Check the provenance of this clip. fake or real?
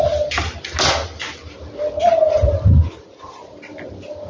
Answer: real